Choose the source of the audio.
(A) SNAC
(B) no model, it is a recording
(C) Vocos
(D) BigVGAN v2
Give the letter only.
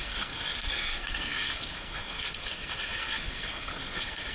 A